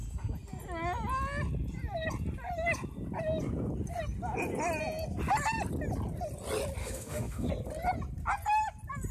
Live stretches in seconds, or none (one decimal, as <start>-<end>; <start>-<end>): 0.0-6.8; 7.5-9.1